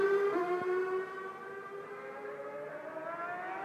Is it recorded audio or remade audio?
recorded